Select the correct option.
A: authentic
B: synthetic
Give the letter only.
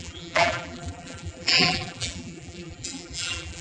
B